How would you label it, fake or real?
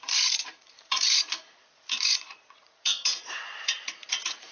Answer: fake